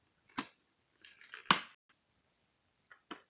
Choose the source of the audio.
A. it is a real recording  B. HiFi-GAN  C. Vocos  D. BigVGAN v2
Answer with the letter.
A